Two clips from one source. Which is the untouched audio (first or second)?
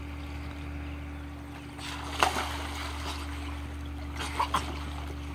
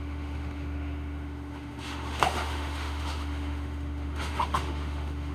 first